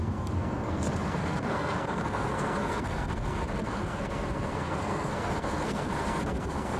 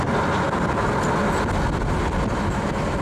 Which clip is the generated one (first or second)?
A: first